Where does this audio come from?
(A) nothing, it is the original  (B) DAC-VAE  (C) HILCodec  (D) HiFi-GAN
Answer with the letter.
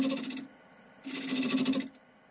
A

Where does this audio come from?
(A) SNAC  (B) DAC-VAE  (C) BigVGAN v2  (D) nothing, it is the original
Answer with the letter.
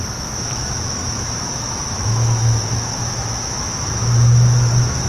B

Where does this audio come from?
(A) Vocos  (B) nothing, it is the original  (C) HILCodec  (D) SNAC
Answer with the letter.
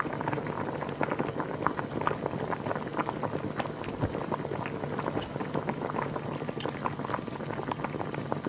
B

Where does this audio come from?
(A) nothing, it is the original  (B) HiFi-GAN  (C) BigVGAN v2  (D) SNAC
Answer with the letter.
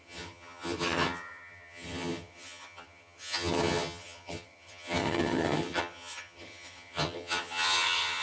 B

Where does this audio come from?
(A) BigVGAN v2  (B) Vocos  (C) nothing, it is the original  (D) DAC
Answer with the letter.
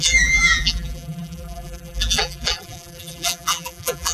A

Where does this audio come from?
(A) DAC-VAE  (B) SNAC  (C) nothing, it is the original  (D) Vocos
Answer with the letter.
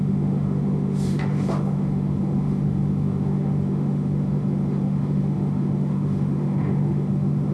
A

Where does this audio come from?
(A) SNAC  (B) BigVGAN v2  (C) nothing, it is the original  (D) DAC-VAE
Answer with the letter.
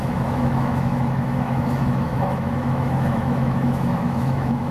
D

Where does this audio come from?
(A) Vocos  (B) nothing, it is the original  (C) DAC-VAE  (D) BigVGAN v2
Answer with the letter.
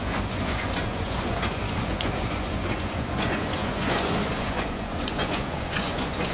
A